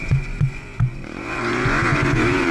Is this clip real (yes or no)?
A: no